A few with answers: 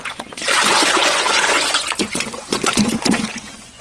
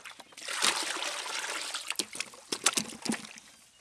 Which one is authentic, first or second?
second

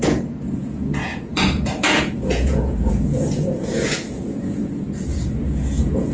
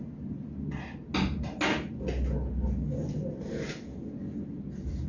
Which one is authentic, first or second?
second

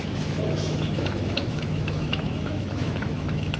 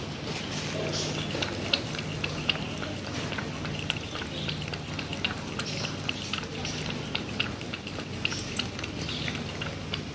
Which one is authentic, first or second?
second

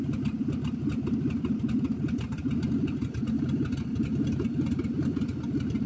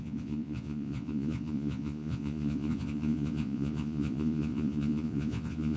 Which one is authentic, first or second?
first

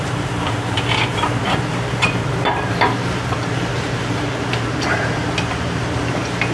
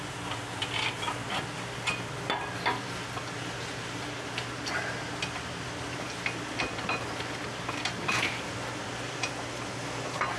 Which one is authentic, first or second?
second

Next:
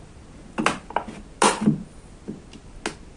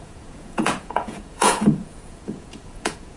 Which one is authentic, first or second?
first